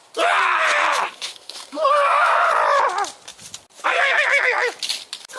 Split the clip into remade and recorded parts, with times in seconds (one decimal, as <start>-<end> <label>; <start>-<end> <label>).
0.0-1.1 recorded; 1.1-2.5 remade; 2.5-5.4 recorded